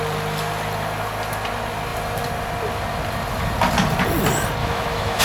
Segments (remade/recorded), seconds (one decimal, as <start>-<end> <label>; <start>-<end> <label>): 0.0-4.6 recorded; 4.6-5.2 remade

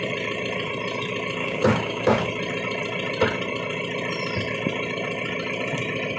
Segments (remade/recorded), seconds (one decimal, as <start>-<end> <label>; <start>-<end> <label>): 0.0-1.4 recorded; 1.4-2.3 remade; 2.3-6.2 recorded